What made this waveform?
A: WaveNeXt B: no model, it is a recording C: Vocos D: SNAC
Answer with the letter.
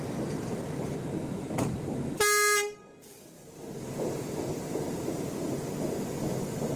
B